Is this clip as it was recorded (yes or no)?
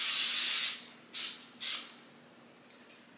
yes